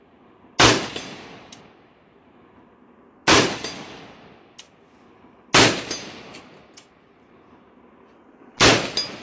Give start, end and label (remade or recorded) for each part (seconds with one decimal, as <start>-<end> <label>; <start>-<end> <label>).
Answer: 0.0-9.2 recorded